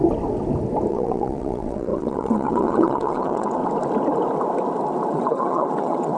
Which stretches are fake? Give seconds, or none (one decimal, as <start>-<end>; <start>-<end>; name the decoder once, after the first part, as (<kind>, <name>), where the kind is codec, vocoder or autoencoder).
0.9-3.6 (vocoder, WaveNeXt); 5.1-6.2